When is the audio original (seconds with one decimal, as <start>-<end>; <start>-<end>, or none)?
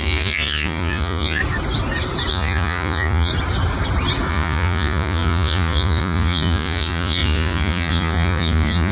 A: 1.4-2.3; 3.3-4.3